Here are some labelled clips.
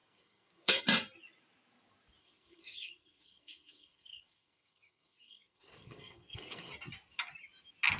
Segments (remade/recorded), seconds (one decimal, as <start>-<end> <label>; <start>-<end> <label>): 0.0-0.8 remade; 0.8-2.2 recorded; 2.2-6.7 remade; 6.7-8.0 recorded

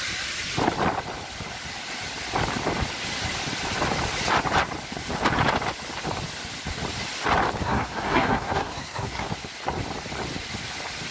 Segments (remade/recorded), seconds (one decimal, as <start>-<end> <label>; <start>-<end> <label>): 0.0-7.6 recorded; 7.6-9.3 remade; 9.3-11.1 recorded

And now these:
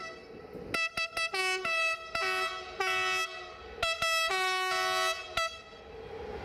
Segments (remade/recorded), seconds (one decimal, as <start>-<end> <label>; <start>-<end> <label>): 0.0-6.4 recorded